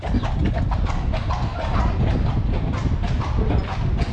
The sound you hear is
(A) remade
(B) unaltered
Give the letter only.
B